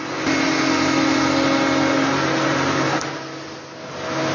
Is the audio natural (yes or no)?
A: yes